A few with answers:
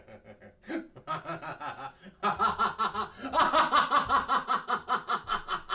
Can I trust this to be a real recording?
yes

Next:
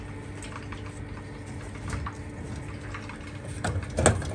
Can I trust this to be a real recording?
yes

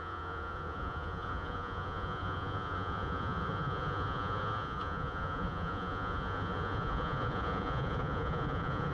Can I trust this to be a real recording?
no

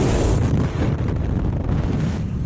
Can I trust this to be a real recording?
yes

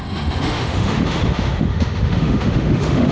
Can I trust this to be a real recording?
no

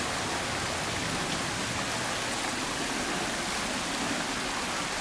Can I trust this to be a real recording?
yes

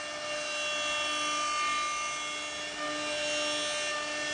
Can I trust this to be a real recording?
yes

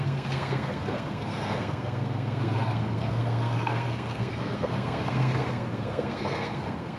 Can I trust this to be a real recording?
no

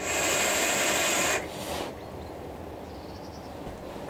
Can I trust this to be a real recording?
yes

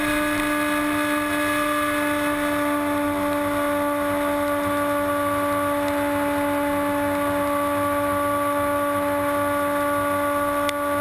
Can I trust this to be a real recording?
yes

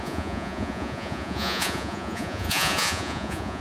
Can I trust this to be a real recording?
no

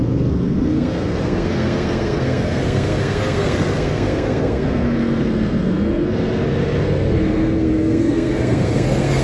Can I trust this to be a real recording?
no